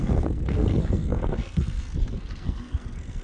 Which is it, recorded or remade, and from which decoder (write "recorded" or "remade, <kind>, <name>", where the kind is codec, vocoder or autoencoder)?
remade, codec, SNAC